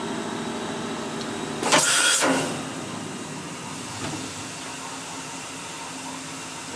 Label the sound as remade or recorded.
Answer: recorded